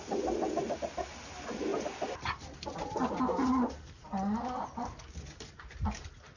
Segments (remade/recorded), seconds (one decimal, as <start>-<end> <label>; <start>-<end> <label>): 0.0-6.4 recorded